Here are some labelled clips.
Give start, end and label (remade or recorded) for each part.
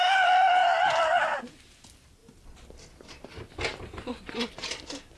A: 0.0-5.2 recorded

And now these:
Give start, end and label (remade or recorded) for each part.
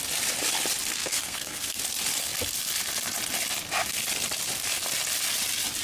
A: 0.0-1.0 recorded; 1.0-1.8 remade; 1.8-5.8 recorded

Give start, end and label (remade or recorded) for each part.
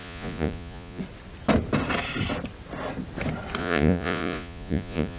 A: 0.0-1.0 remade; 1.0-3.6 recorded; 3.6-5.2 remade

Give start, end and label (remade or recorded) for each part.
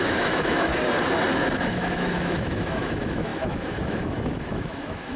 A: 0.0-0.7 remade; 0.7-1.6 recorded; 1.6-5.2 remade